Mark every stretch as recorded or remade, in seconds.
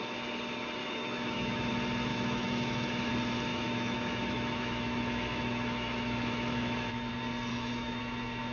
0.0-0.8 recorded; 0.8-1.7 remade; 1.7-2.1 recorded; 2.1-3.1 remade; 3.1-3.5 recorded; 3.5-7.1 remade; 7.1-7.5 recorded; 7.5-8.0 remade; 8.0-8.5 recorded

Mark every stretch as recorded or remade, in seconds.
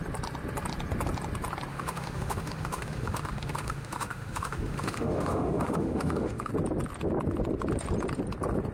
0.0-1.7 recorded; 1.7-6.5 remade; 6.5-8.7 recorded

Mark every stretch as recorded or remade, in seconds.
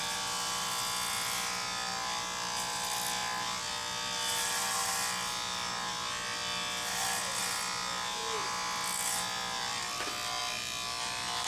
0.0-11.5 recorded